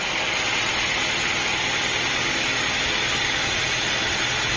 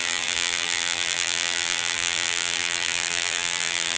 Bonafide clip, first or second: first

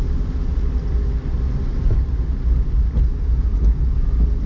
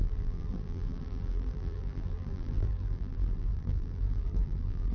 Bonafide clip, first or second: first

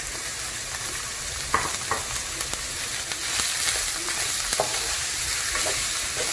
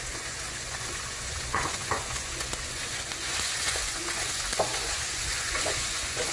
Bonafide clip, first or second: first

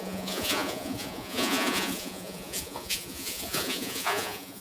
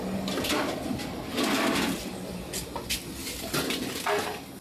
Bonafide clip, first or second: second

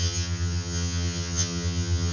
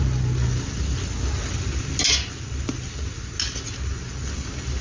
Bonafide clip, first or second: second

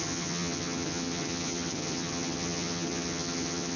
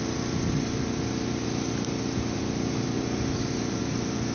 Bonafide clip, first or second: second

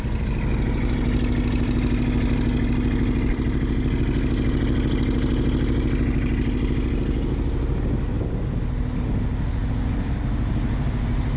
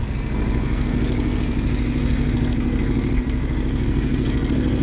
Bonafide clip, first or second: first